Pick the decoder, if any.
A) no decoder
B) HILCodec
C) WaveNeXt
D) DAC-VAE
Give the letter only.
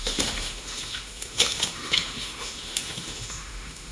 D